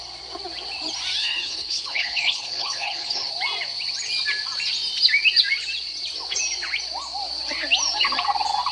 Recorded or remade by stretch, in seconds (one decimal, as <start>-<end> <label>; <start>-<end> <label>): 0.0-1.2 recorded; 1.2-3.3 remade; 3.3-8.7 recorded